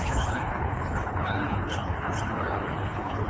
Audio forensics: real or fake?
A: fake